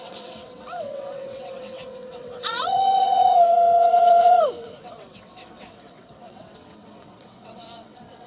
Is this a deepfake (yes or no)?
yes